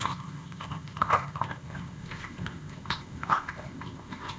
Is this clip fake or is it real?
fake